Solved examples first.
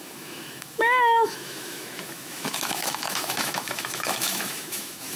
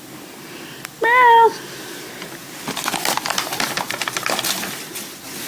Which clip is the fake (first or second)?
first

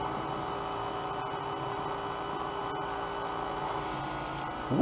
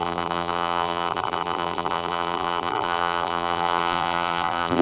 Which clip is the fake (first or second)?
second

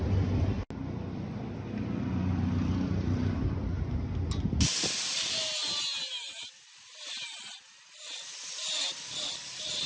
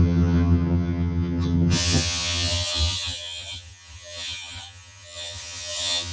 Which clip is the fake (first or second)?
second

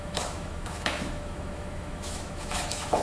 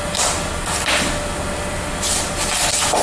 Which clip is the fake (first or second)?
first